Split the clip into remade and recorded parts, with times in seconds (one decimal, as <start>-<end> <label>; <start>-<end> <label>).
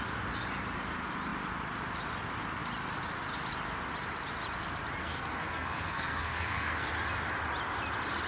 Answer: 0.0-5.0 recorded; 5.0-6.9 remade; 6.9-8.3 recorded